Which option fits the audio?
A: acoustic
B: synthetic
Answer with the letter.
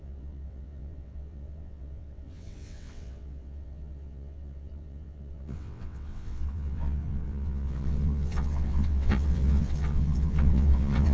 B